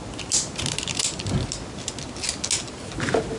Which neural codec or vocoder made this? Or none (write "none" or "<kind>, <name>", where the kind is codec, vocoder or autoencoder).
none